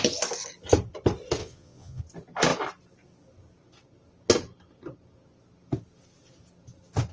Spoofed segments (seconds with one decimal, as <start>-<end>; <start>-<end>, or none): 1.4-2.0

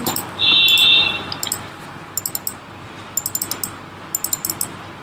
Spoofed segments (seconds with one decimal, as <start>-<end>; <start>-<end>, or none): none

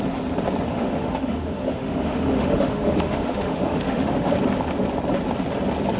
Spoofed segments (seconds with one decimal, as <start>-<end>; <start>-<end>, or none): 0.7-4.3